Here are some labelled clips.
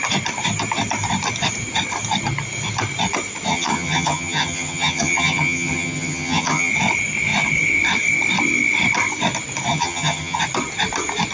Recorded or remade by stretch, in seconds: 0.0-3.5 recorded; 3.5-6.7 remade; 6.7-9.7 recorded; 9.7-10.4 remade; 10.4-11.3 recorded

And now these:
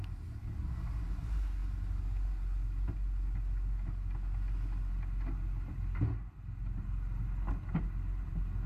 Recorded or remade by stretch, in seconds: 0.0-0.4 recorded; 0.4-1.0 remade; 1.0-8.7 recorded

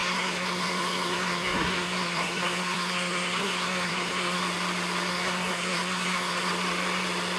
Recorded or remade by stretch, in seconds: 0.0-4.4 remade; 4.4-5.1 recorded; 5.1-6.5 remade; 6.5-7.4 recorded

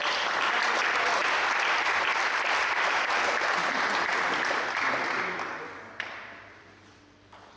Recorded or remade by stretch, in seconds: 0.0-1.2 recorded; 1.2-1.9 remade; 1.9-4.1 recorded; 4.1-6.9 remade; 6.9-7.6 recorded

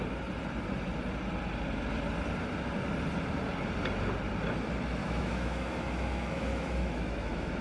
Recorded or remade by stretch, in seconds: 0.0-5.0 recorded; 5.0-7.6 remade

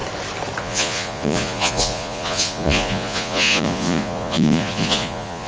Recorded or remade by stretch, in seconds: 0.0-0.6 recorded; 0.6-5.5 remade

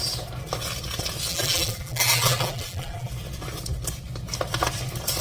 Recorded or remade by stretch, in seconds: 0.0-1.3 recorded; 1.3-3.1 remade; 3.1-5.2 recorded